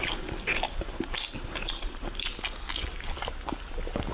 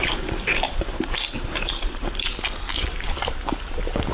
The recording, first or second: first